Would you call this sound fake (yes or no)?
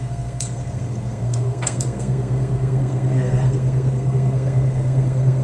yes